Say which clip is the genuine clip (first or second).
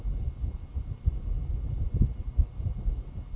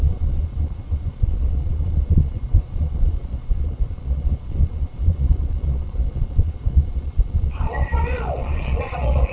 first